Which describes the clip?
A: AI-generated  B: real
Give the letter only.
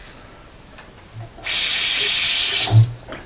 B